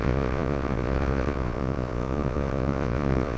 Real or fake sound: fake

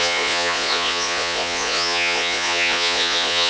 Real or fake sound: fake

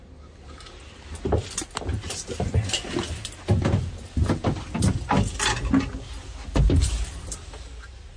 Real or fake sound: real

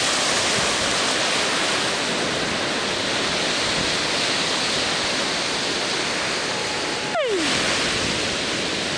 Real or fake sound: real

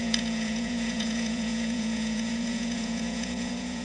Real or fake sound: fake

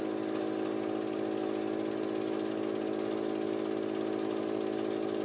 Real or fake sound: real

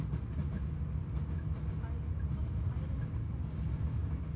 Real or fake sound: real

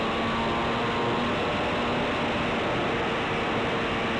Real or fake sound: real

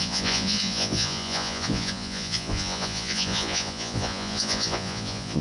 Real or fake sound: fake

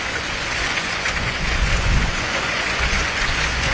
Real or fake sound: fake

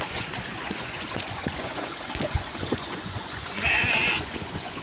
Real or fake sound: fake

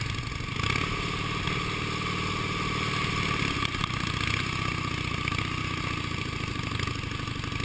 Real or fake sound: real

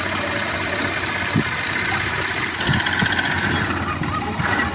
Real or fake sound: real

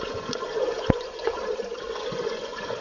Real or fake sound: fake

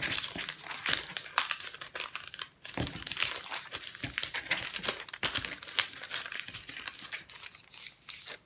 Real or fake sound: real